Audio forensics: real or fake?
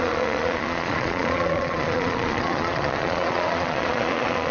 fake